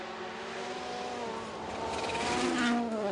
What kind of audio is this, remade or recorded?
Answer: recorded